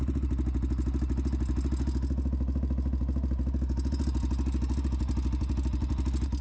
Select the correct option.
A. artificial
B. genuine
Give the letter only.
B